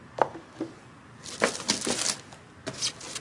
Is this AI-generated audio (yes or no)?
no